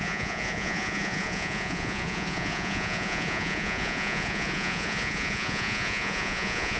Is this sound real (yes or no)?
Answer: no